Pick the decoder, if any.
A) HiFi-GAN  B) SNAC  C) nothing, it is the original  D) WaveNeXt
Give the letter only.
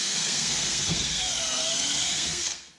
B